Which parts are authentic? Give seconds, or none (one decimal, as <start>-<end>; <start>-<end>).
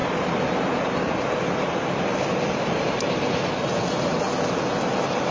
0.0-5.3